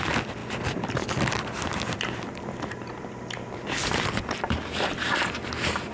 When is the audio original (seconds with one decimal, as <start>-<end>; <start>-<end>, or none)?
0.0-5.9